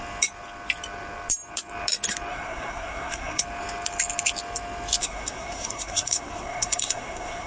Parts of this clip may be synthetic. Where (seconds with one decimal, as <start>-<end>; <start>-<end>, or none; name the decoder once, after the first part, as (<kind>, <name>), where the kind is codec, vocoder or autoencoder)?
2.3-3.4 (codec, SNAC); 5.0-7.5